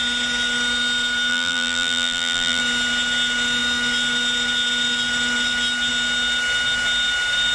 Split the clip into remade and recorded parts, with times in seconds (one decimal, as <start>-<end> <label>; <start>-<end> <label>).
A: 0.0-1.3 recorded; 1.3-2.6 remade; 2.6-7.5 recorded